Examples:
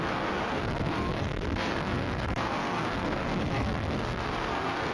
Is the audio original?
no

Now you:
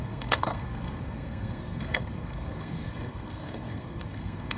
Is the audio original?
no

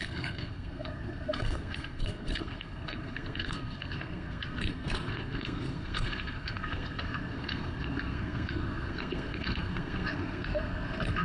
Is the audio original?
no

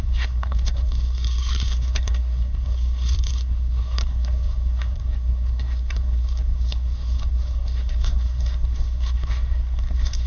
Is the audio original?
no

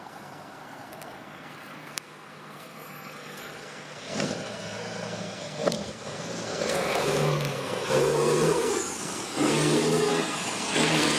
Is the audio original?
no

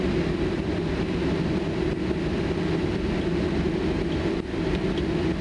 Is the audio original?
yes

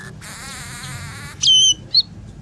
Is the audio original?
yes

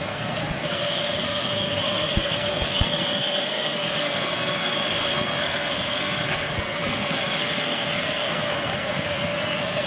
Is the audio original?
no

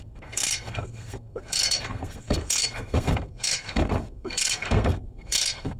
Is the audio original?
no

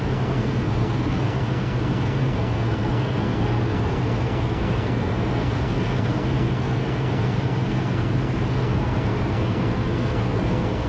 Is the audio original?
no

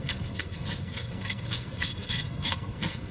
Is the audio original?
no